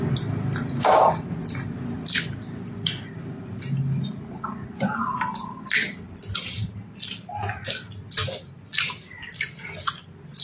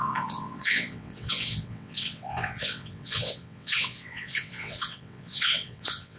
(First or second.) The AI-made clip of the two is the second